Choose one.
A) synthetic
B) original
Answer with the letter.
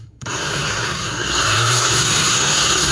A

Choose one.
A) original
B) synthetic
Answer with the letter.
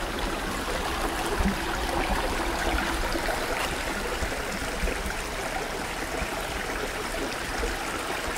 A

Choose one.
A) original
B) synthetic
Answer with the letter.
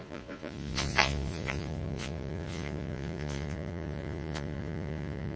B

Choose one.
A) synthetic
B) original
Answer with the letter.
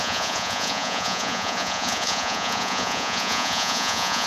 A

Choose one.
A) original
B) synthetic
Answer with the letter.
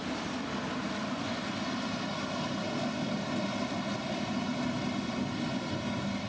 A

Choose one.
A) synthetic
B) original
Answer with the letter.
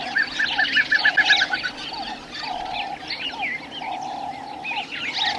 B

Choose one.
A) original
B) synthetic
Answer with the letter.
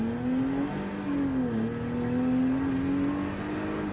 A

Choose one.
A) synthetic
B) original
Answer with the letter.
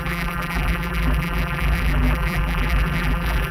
A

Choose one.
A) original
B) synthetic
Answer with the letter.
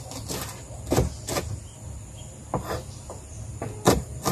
A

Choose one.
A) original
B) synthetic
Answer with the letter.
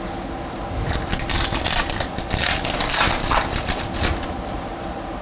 A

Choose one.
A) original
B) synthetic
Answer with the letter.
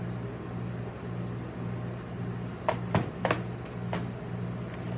A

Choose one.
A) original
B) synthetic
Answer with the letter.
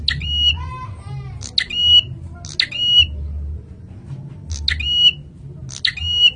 A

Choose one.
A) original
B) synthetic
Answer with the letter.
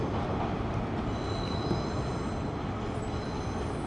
A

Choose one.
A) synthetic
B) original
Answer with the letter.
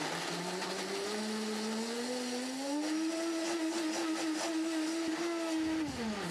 B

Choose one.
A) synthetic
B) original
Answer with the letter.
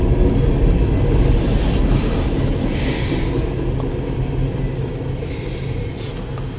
B